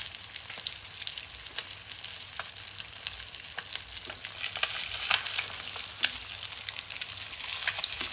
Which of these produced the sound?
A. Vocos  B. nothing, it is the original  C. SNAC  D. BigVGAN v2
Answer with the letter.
B